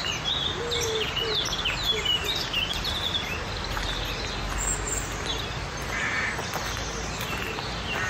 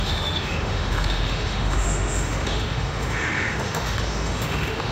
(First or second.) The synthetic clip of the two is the second